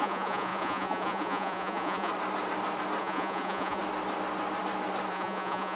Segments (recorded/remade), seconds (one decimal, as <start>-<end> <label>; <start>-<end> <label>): 0.0-2.1 remade; 2.1-3.0 recorded; 3.0-3.8 remade; 3.8-5.1 recorded; 5.1-5.8 remade